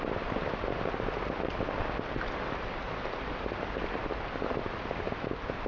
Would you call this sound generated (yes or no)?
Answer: no